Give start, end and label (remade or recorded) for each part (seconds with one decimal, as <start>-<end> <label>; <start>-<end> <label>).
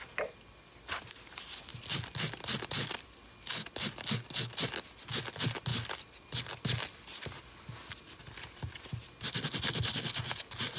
0.0-10.8 recorded